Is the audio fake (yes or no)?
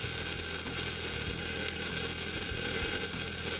no